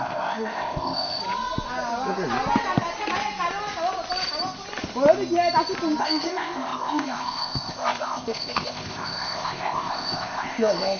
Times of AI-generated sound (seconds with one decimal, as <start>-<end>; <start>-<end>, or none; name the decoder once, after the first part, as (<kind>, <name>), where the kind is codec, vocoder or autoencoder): 0.0-1.2 (codec, ZipCodec); 6.0-11.0